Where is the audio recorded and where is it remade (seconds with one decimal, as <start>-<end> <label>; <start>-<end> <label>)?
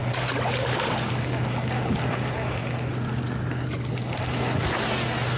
0.0-5.4 recorded